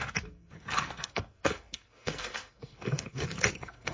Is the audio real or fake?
fake